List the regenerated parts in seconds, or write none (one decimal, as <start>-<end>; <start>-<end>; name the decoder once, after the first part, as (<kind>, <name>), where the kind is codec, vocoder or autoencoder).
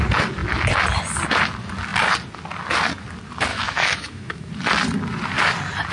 3.5-4.5 (autoencoder, DAC-VAE)